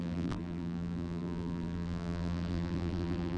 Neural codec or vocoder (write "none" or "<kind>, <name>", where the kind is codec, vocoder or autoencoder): vocoder, BigVGAN v2